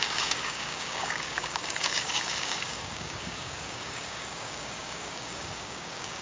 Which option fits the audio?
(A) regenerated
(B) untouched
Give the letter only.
A